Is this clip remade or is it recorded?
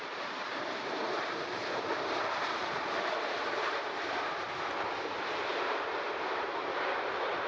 remade